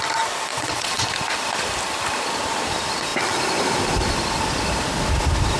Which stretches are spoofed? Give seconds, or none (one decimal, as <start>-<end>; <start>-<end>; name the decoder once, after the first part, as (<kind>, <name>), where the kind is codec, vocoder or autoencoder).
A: 0.5-1.0 (vocoder, WaveNeXt)